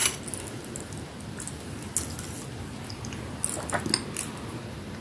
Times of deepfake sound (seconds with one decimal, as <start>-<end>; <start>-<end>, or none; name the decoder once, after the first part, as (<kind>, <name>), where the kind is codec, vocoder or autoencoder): none